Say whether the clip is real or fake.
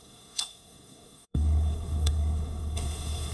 fake